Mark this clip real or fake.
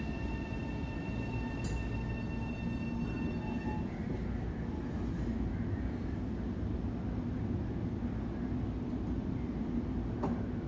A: real